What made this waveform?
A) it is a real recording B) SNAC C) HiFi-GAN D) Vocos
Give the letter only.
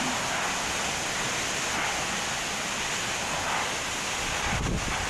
A